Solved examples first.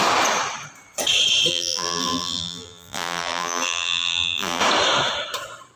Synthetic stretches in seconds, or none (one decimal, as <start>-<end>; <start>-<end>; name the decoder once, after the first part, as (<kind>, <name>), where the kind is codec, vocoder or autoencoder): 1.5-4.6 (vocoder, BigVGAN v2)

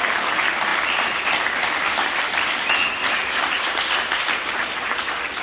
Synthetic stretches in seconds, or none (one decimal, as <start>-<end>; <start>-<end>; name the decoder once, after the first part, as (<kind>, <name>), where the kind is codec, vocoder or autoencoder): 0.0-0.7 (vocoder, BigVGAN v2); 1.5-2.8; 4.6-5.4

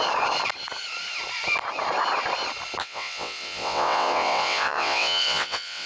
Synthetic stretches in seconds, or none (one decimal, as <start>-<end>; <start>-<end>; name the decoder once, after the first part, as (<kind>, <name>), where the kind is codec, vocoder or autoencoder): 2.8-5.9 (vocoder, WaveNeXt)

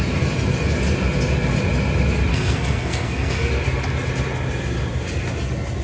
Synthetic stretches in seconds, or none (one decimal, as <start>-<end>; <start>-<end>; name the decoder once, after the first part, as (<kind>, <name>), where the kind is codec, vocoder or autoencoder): 2.3-3.5 (codec, SNAC)

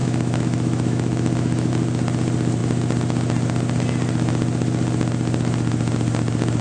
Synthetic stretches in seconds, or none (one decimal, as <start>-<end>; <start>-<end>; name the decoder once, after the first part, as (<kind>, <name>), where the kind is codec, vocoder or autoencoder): 0.0-1.7 (autoencoder, DAC-VAE)

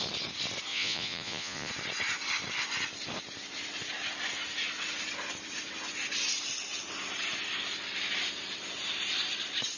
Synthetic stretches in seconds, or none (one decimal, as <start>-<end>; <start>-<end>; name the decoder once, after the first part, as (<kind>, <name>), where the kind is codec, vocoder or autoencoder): 0.7-1.7 (vocoder, Vocos)

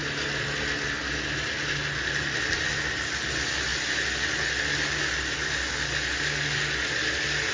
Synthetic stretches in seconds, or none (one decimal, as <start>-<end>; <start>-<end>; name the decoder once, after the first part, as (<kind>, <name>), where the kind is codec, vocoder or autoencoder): none

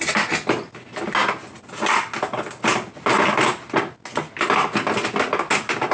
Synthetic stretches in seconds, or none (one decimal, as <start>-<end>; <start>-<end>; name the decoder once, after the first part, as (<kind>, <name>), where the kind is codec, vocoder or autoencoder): none